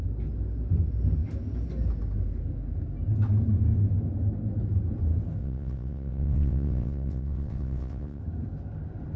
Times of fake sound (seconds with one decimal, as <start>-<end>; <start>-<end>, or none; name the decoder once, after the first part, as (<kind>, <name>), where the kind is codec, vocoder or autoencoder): 5.4-8.2 (vocoder, WaveNeXt)